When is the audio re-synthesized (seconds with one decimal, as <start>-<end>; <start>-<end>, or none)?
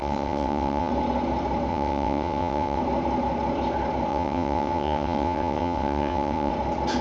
0.0-0.9; 1.7-2.8; 4.1-6.5